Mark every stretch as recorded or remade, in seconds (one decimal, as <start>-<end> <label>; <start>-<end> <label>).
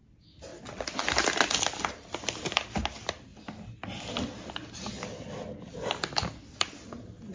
0.0-0.5 recorded; 0.5-1.9 remade; 1.9-7.3 recorded